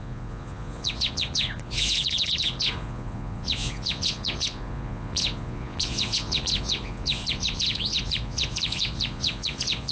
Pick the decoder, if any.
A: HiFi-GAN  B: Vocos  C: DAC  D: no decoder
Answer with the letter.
B